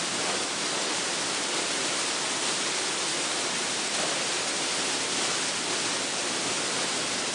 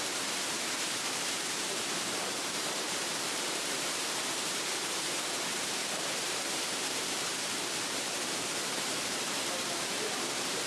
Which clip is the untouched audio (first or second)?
first